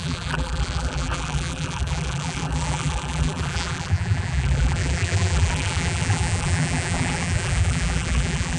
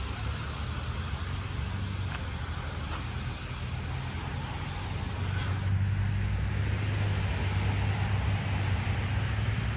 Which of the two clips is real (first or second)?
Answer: second